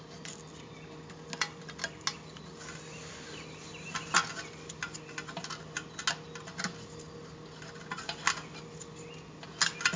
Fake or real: real